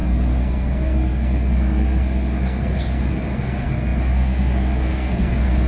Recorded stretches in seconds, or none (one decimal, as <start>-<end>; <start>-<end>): none